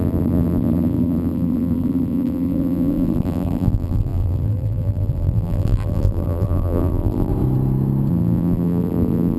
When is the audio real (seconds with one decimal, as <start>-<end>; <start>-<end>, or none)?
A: 7.3-8.1